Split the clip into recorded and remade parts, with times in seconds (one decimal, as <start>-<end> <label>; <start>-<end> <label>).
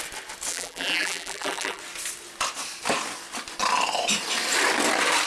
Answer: 0.0-0.5 recorded; 0.5-1.8 remade; 1.8-5.3 recorded